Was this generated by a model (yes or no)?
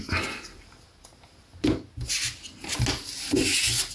no